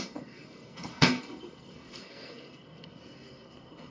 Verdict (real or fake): fake